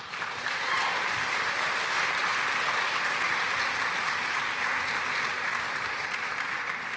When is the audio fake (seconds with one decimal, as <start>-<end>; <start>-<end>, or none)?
0.0-2.3; 4.0-5.5; 6.3-7.0